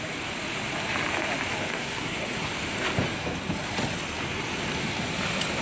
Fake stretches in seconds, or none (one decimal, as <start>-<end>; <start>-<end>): 1.7-2.5